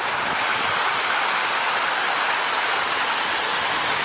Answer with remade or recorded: recorded